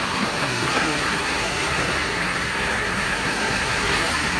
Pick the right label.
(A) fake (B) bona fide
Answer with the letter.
A